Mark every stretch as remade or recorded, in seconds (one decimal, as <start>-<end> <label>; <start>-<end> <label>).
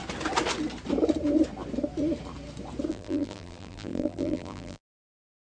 0.0-2.9 recorded; 2.9-5.6 remade